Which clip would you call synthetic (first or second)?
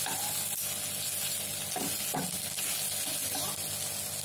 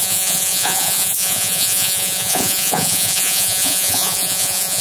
second